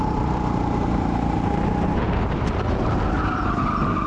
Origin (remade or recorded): remade